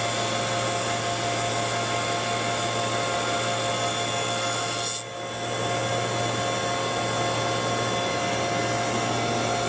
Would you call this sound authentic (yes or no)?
yes